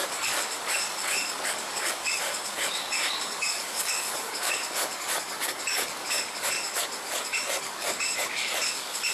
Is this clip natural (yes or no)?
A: no